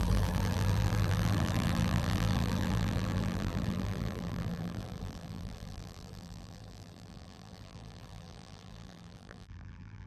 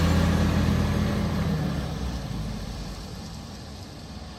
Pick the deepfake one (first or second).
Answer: first